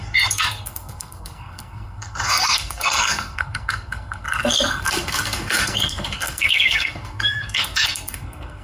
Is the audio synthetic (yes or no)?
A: yes